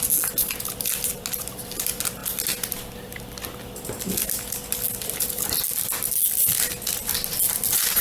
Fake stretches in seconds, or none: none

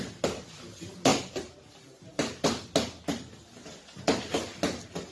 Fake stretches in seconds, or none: none